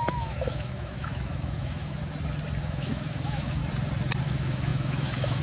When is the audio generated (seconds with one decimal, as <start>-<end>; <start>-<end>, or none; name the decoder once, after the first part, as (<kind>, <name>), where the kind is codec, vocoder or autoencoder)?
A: 0.0-2.0 (autoencoder, DAC-VAE); 2.6-3.6; 4.2-5.4